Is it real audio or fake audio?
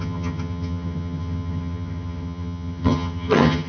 fake